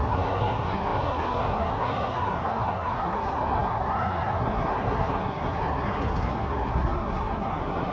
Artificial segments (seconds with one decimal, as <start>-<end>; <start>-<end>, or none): 0.0-7.9